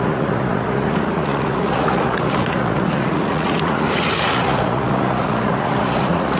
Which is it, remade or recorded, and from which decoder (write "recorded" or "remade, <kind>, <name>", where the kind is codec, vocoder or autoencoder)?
remade, vocoder, Vocos